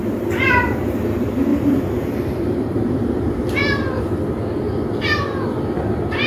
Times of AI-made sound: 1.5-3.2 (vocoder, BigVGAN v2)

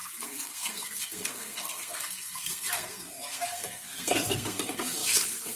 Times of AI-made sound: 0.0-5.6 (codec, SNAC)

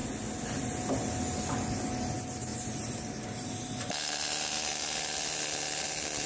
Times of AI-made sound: none

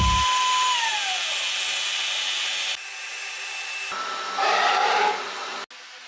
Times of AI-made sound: none

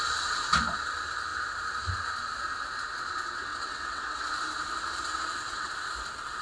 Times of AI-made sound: 3.5-4.2 (vocoder, WaveNeXt); 5.1-5.7

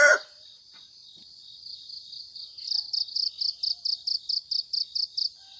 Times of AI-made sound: none

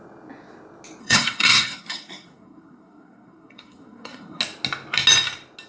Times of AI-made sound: 1.0-4.4 (codec, SNAC)